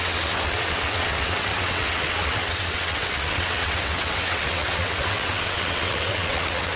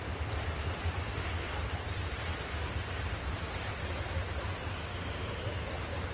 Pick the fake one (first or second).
first